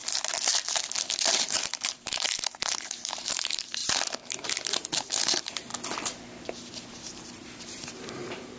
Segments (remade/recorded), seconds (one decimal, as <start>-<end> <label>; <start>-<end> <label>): 0.0-1.3 recorded; 1.3-3.8 remade; 3.8-4.7 recorded; 4.7-5.7 remade; 5.7-7.0 recorded; 7.0-8.6 remade